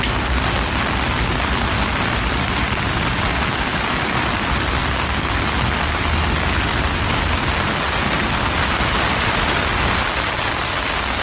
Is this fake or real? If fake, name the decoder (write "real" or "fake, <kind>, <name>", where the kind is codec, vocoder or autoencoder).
real